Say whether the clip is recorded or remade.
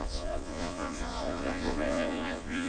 remade